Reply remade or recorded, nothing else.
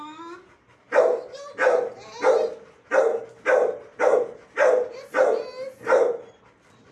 recorded